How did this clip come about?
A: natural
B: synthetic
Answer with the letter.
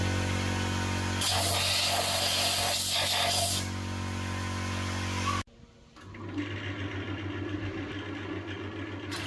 A